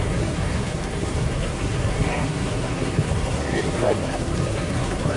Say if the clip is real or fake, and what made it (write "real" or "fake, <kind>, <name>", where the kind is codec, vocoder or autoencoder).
fake, codec, SNAC